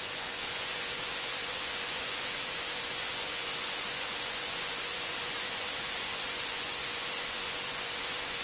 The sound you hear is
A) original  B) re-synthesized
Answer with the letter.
B